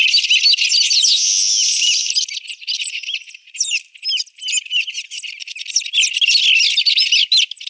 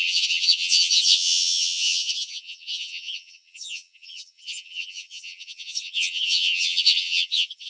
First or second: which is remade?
second